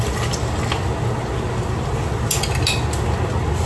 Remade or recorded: recorded